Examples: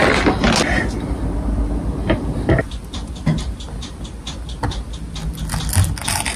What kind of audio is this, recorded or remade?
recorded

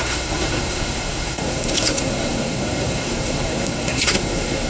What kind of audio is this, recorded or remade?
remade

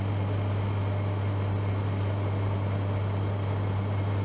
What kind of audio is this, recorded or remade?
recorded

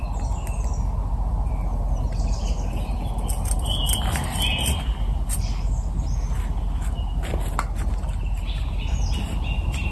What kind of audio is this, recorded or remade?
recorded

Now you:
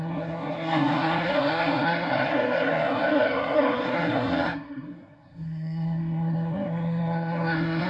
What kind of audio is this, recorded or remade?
remade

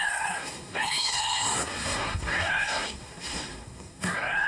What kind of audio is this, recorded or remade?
remade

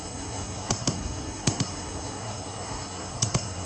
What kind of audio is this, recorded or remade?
remade